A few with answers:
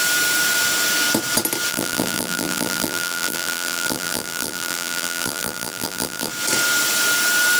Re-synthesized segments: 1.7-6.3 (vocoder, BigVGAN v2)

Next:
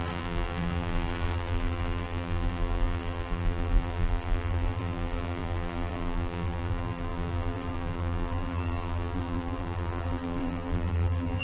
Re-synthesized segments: 0.0-11.4 (vocoder, BigVGAN v2)

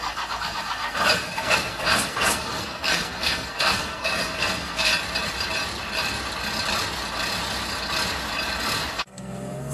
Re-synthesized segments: 0.0-4.9 (codec, SNAC); 8.9-9.7

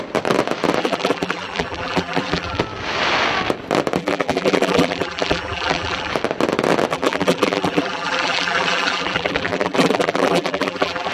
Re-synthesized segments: 0.8-2.6 (vocoder, BigVGAN v2); 4.0-6.1; 6.9-11.1

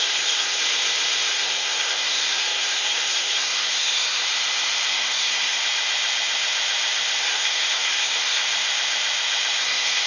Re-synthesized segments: 0.0-0.6 (codec, SNAC); 1.3-4.2; 4.9-5.6; 7.2-8.4; 9.6-10.1

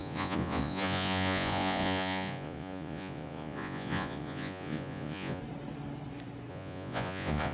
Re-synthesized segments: 0.0-5.4 (vocoder, Vocos); 6.5-7.5

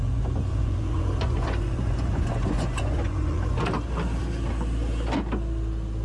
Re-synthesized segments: 0.0-3.6 (vocoder, Vocos)